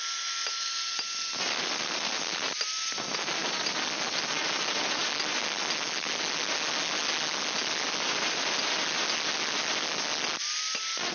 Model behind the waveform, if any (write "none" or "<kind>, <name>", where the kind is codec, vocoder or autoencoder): none